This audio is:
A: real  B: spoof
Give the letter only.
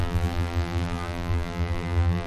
B